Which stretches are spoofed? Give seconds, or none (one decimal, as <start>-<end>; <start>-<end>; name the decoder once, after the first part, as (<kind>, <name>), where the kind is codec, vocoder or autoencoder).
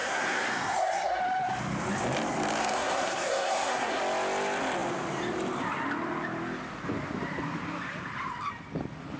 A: 0.0-1.2 (codec, SNAC); 2.6-4.0